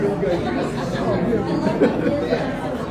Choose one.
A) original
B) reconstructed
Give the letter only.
A